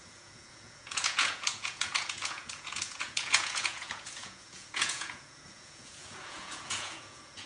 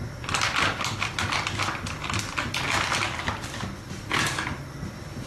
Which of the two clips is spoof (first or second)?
first